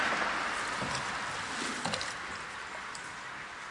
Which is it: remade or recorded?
recorded